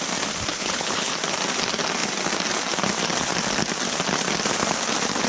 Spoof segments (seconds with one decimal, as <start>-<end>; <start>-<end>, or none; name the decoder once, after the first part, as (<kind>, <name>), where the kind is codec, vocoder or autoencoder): 0.5-1.1 (codec, HILCodec)